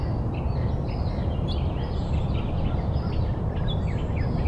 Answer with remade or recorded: recorded